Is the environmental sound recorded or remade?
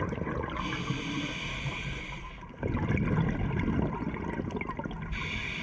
recorded